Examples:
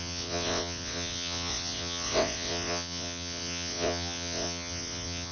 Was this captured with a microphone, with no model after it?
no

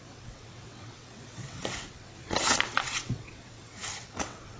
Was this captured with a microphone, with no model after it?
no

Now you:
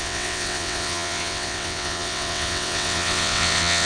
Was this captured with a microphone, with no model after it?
no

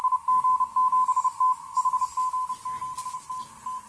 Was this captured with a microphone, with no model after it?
yes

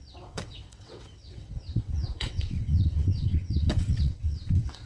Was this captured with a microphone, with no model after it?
no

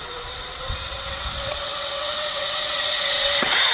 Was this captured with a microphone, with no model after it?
no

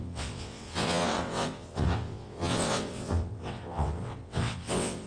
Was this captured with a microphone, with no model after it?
no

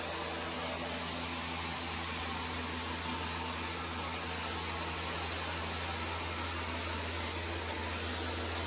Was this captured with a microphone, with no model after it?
yes